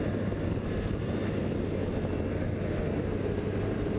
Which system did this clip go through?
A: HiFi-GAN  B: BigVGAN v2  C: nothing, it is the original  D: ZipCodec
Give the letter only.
C